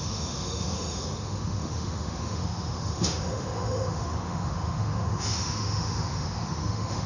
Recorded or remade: remade